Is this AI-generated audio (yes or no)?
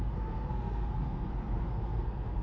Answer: yes